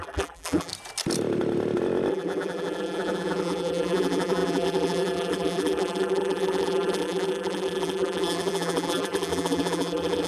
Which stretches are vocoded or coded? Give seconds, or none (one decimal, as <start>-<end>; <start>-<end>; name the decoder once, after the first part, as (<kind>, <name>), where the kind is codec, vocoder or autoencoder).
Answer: 0.0-0.7 (vocoder, BigVGAN v2); 2.1-10.3